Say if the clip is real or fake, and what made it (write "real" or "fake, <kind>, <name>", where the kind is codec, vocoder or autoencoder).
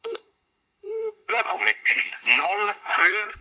fake, codec, SNAC